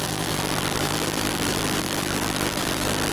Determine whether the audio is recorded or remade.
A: remade